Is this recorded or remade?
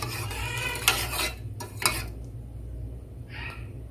recorded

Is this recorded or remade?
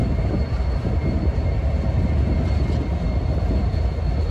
recorded